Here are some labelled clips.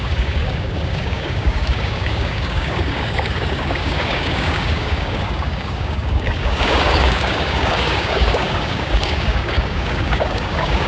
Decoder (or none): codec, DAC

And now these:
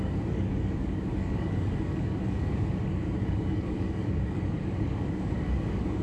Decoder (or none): codec, DAC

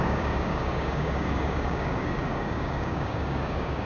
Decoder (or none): codec, DAC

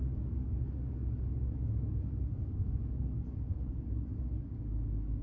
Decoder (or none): codec, DAC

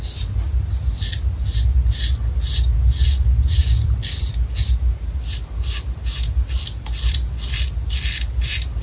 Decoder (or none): none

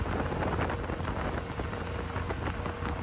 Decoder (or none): none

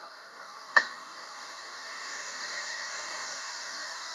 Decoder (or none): codec, DAC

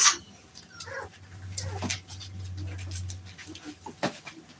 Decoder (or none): none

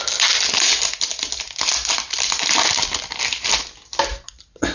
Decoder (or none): none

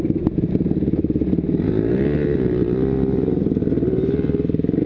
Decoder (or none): none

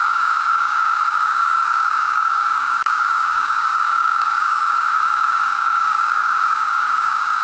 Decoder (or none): codec, DAC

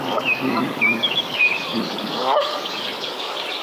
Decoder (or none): codec, DAC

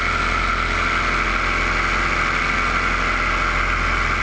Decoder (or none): none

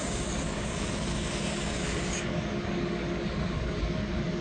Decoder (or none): codec, DAC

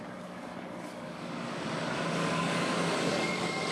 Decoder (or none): codec, DAC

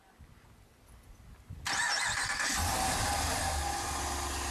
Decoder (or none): none